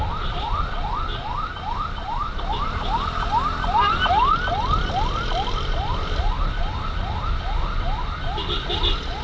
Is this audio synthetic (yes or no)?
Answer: no